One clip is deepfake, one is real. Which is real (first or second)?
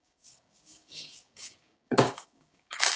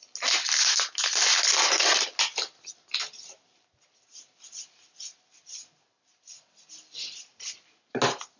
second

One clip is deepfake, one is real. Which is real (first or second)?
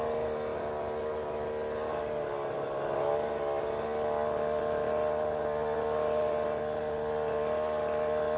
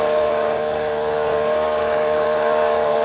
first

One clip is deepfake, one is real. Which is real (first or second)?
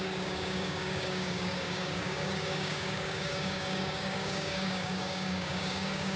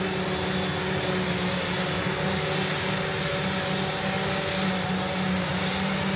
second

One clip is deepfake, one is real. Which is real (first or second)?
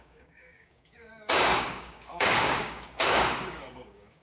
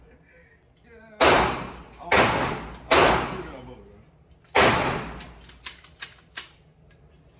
second